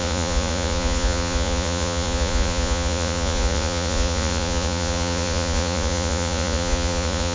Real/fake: fake